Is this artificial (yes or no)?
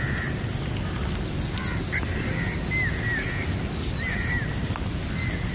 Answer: no